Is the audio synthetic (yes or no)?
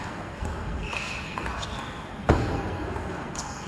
yes